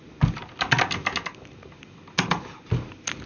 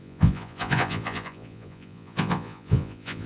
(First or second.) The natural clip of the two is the first